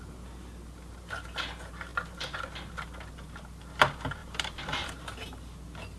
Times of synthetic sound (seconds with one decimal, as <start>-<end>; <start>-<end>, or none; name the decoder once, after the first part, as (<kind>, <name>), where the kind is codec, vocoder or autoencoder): 1.9-3.0 (vocoder, BigVGAN v2); 4.2-4.9